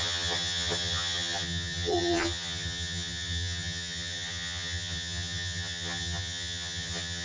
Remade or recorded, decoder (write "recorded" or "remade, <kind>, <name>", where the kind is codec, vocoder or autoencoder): remade, vocoder, HiFi-GAN